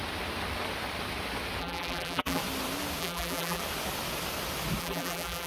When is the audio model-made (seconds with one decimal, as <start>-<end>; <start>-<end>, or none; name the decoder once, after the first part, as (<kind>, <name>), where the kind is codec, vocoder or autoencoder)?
1.6-2.4 (vocoder, BigVGAN v2); 3.0-3.6; 4.8-5.5